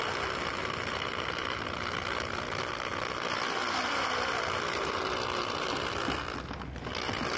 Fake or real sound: real